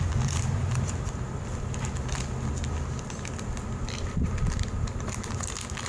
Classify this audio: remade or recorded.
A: recorded